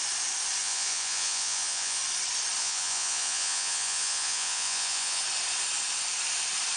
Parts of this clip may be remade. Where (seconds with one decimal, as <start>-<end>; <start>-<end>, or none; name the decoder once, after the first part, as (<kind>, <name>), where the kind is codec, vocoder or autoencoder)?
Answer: 0.6-2.0 (vocoder, Vocos); 2.6-5.2